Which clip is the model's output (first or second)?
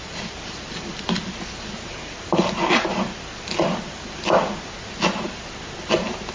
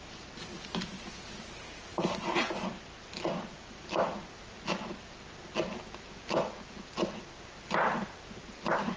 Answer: first